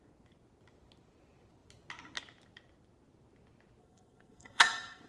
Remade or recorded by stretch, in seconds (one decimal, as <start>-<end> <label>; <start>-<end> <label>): 0.0-3.8 recorded; 3.8-5.1 remade